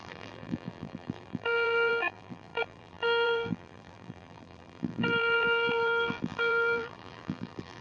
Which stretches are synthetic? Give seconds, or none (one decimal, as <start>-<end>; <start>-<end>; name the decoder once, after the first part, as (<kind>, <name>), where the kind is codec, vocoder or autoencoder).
0.0-7.8 (vocoder, BigVGAN v2)